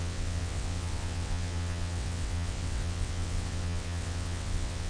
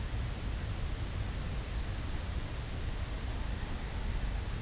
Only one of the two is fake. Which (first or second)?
first